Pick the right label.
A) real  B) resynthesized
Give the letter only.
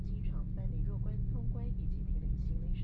A